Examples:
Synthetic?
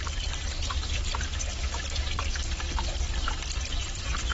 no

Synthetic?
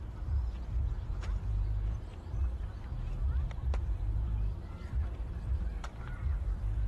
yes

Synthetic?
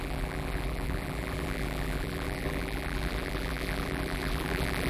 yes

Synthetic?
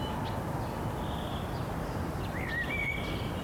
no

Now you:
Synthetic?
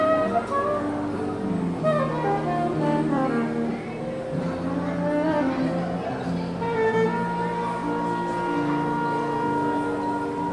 no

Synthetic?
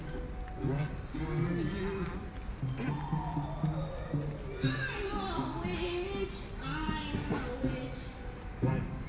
no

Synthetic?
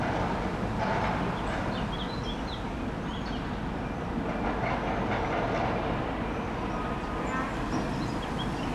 no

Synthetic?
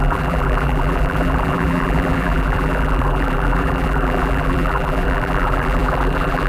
yes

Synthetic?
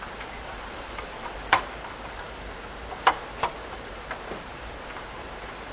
yes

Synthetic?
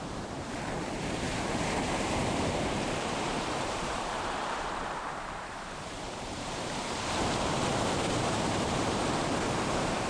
yes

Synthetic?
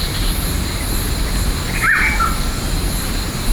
no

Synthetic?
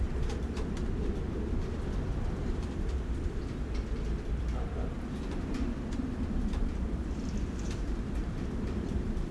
yes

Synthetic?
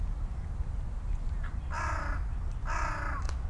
no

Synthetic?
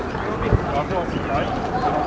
no